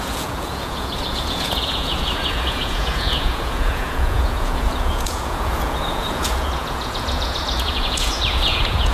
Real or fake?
fake